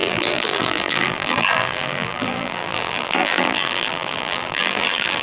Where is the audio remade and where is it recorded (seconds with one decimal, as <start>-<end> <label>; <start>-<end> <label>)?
0.0-5.2 remade